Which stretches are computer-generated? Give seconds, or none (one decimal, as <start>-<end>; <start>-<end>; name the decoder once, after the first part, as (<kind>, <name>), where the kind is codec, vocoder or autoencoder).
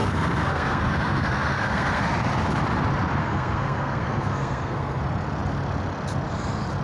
0.0-2.0 (codec, SNAC); 3.2-5.0